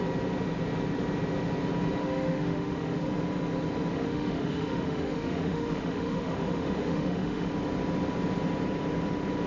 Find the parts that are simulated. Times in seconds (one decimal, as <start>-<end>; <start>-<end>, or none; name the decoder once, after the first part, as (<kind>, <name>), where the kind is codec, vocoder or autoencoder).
2.0-3.1 (autoencoder, DAC-VAE); 3.9-7.5